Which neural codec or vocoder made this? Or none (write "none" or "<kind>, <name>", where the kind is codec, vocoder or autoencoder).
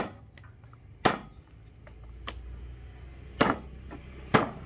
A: none